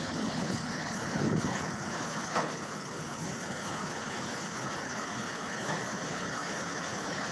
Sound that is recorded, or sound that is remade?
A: remade